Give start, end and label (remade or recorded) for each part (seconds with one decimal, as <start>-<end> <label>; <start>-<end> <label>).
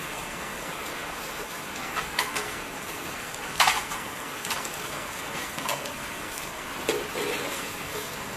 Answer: 0.0-6.7 remade; 6.7-7.5 recorded; 7.5-8.4 remade